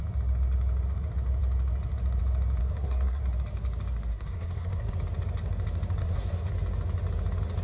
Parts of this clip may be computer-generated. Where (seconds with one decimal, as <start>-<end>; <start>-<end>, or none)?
2.6-3.2; 4.1-4.9; 6.0-6.5